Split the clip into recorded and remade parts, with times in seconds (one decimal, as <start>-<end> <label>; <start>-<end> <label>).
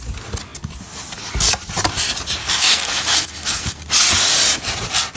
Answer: 0.0-2.4 recorded; 2.4-3.8 remade; 3.8-5.2 recorded